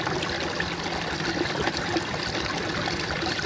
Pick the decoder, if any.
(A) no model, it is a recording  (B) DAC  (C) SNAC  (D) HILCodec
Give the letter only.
A